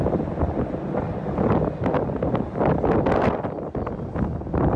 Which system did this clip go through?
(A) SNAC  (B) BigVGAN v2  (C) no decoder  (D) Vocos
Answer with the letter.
C